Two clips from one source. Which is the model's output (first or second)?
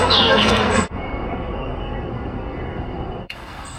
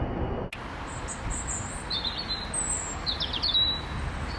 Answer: first